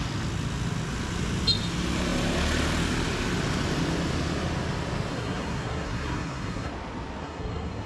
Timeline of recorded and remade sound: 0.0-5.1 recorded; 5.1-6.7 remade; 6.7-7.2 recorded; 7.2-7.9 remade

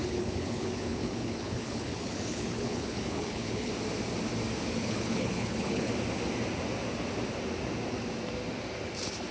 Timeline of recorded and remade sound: 0.0-3.7 remade; 3.7-4.8 recorded; 4.8-5.9 remade; 5.9-9.3 recorded

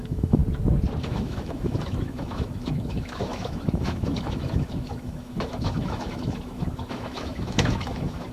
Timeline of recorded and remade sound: 0.0-0.4 remade; 0.4-1.0 recorded; 1.0-8.3 remade